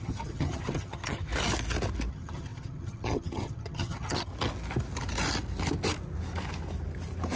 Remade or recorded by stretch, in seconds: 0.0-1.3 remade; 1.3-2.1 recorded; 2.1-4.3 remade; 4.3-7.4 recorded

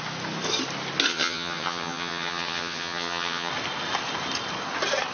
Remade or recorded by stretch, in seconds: 0.0-1.1 recorded; 1.1-3.5 remade; 3.5-5.1 recorded

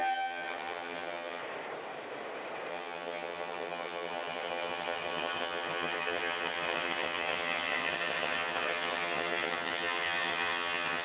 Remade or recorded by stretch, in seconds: 0.0-1.4 remade; 1.4-2.7 recorded; 2.7-11.0 remade

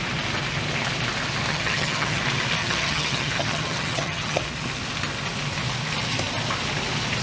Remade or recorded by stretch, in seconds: 0.0-1.5 recorded; 1.5-2.2 remade; 2.2-2.6 recorded; 2.6-4.4 remade; 4.4-7.2 recorded

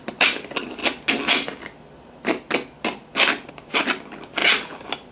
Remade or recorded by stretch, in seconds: 0.0-5.1 recorded

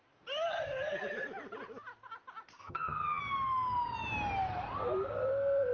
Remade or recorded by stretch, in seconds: 0.0-2.6 recorded; 2.6-3.2 remade; 3.2-5.7 recorded

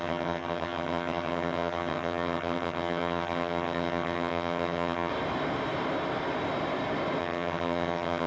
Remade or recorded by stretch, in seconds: 0.0-5.1 remade; 5.1-7.2 recorded; 7.2-8.3 remade

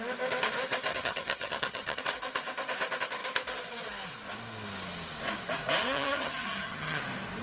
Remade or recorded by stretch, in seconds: 0.0-0.9 recorded; 0.9-2.0 remade; 2.0-5.8 recorded; 5.8-7.0 remade; 7.0-7.4 recorded